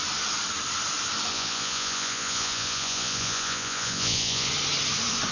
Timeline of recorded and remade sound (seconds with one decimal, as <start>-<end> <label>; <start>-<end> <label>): 0.0-1.3 recorded; 1.3-4.5 remade; 4.5-5.3 recorded